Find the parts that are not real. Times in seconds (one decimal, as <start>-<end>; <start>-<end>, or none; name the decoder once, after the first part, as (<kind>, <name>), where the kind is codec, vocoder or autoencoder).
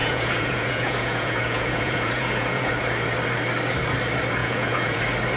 0.0-2.7 (vocoder, Vocos); 4.4-5.0